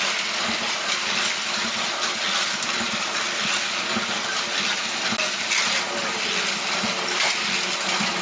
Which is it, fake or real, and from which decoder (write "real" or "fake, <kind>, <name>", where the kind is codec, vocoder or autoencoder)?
real